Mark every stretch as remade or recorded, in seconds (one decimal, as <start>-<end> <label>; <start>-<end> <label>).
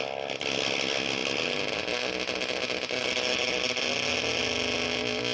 0.0-5.3 recorded